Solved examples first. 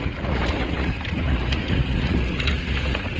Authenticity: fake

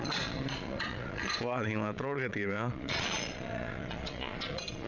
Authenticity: fake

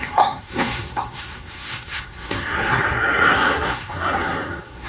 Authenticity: fake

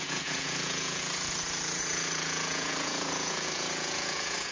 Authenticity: fake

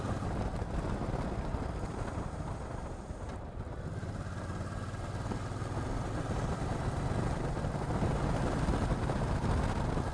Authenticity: real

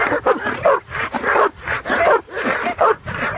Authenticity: real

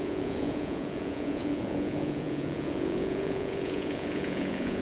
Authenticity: fake